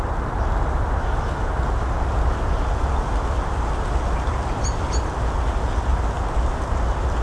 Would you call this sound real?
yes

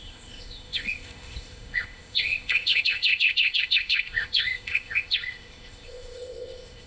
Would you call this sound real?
no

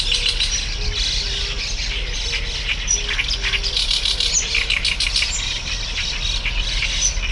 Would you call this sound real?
yes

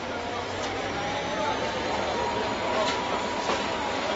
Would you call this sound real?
no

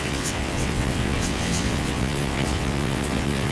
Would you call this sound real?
no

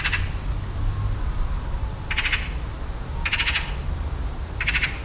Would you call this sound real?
yes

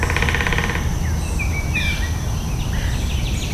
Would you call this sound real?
yes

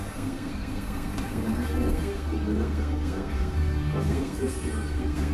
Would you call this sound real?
no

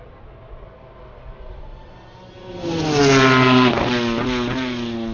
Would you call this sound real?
yes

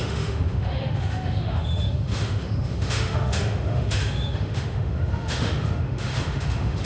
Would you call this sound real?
no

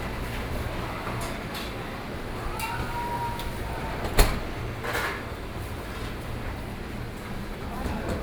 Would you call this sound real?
yes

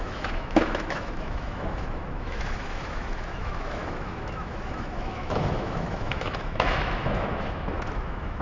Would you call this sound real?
no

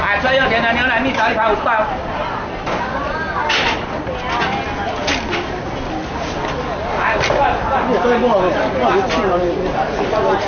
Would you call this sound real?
yes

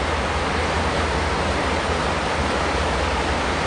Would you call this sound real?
yes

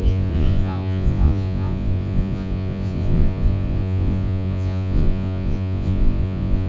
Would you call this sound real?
no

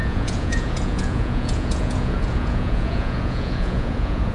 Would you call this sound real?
no